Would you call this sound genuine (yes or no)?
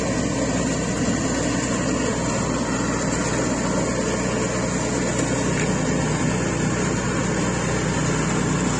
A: yes